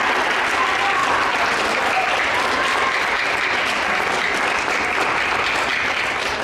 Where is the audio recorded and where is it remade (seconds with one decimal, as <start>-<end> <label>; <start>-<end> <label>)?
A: 0.0-6.4 recorded